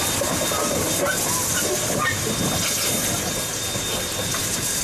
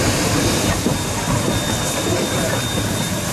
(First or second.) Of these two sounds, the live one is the first